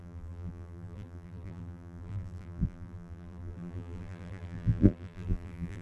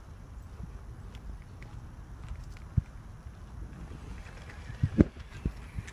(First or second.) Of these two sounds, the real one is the second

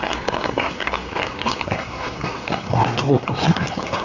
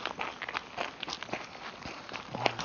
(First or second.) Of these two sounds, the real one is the second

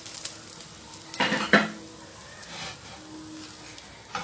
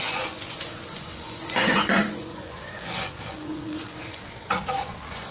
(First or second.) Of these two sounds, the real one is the first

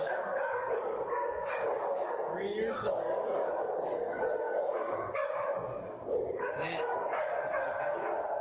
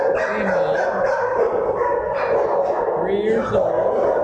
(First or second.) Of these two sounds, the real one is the second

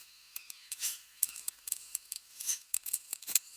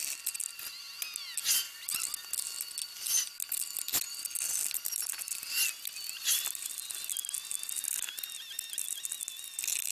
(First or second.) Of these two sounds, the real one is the second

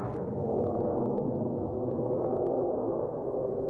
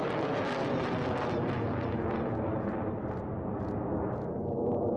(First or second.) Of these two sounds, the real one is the second